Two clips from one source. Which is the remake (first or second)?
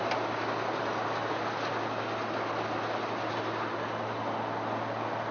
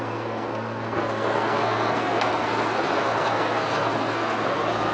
second